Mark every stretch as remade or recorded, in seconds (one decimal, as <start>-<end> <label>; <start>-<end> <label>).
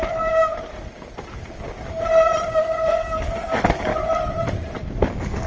0.0-0.5 remade; 0.5-2.5 recorded; 2.5-3.9 remade; 3.9-5.1 recorded; 5.1-5.5 remade